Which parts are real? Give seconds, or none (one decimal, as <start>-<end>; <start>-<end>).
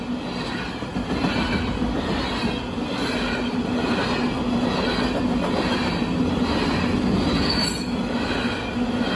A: 0.0-9.2